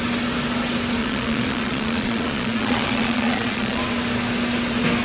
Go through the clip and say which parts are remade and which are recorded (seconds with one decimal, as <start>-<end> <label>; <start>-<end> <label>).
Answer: 0.0-1.0 recorded; 1.0-3.8 remade; 3.8-5.0 recorded